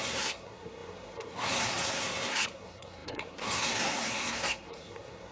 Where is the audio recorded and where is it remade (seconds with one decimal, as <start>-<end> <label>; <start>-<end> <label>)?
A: 0.0-5.3 remade